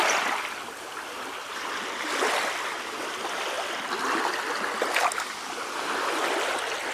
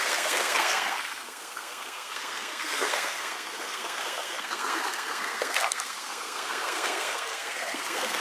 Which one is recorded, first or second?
first